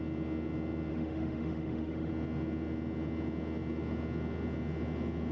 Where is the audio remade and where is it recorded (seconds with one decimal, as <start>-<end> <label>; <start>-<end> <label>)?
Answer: 0.0-0.9 recorded; 0.9-2.1 remade; 2.1-5.3 recorded